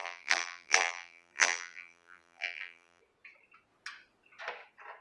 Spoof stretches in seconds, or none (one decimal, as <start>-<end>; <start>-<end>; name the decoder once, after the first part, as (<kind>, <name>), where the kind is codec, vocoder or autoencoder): 0.0-3.0 (vocoder, BigVGAN v2)